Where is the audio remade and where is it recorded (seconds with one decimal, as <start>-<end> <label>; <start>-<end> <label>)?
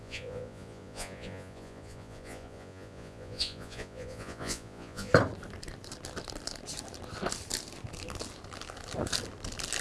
0.0-5.1 remade; 5.1-9.8 recorded